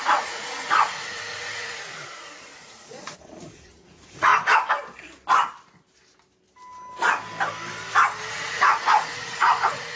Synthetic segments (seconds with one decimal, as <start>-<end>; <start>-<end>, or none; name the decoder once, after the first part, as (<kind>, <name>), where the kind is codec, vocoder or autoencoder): 0.0-4.3 (vocoder, Vocos); 8.3-10.0